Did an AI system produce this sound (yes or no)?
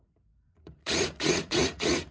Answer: yes